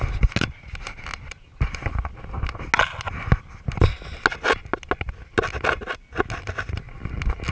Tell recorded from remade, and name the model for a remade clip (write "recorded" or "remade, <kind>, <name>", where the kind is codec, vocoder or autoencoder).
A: recorded